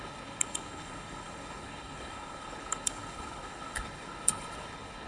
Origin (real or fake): fake